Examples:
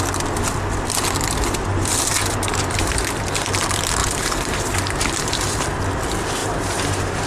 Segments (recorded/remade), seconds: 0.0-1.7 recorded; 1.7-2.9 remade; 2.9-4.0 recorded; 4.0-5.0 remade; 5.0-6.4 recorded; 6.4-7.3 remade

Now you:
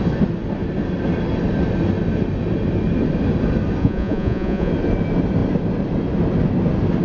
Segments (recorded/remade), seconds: 0.0-3.8 recorded; 3.8-4.7 remade; 4.7-7.0 recorded

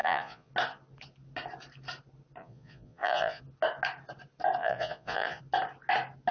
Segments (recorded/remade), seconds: 0.0-0.5 remade; 0.5-2.4 recorded; 2.4-3.4 remade; 3.4-4.6 recorded; 4.6-5.4 remade; 5.4-6.3 recorded

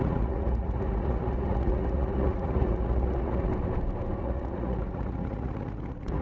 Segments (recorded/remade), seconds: 0.0-3.5 remade; 3.5-4.2 recorded; 4.2-6.2 remade

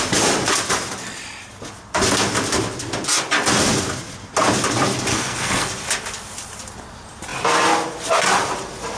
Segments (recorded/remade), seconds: 0.0-5.1 recorded; 5.1-5.7 remade; 5.7-9.0 recorded

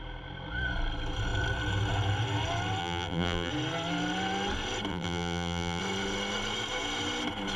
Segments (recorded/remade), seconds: 0.0-2.8 recorded; 2.8-3.5 remade; 3.5-4.9 recorded; 4.9-5.8 remade; 5.8-7.6 recorded